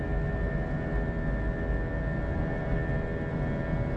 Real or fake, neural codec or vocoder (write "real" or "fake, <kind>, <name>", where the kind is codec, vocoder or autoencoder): real